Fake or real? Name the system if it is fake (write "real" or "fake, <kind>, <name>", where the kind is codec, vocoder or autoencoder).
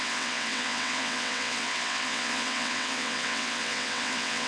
fake, vocoder, WaveNeXt